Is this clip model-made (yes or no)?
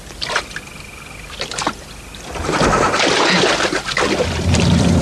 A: no